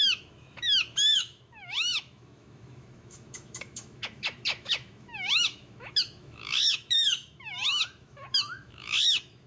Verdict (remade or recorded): remade